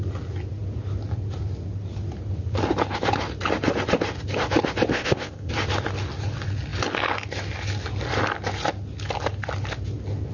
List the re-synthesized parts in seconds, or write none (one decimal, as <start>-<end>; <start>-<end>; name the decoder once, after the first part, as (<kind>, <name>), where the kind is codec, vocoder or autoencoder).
4.9-5.5 (codec, ZipCodec)